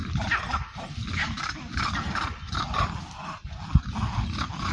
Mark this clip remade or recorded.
recorded